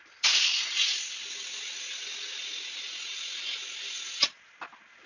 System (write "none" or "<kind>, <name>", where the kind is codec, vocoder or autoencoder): none